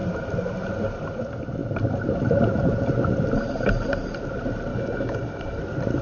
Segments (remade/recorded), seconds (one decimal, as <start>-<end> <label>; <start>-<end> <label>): 0.0-4.7 recorded; 4.7-5.6 remade; 5.6-6.0 recorded